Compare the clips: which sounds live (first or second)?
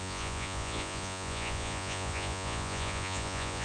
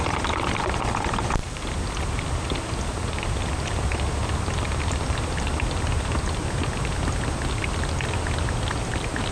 second